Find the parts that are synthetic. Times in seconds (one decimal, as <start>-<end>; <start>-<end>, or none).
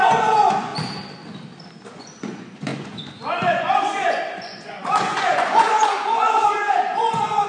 0.0-0.7; 1.9-7.5